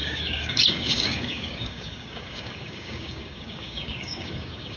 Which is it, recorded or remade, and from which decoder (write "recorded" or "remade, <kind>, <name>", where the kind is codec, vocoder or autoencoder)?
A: remade, codec, DAC